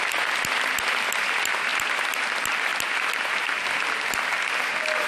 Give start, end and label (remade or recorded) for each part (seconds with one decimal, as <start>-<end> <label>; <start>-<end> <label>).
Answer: 0.0-5.1 recorded